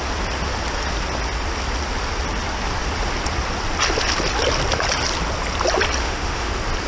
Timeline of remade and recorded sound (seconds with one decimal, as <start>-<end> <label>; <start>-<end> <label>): 0.0-6.0 recorded; 6.0-6.5 remade; 6.5-6.9 recorded